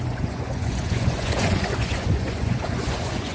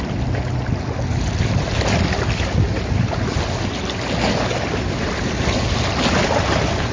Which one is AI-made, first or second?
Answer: first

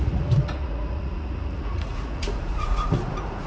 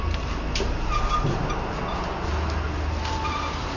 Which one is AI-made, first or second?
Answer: first